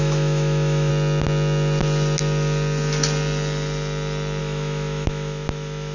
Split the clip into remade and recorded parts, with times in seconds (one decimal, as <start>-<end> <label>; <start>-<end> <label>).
0.0-0.9 remade; 0.9-4.4 recorded; 4.4-5.9 remade